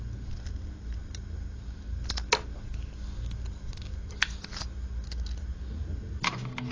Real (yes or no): yes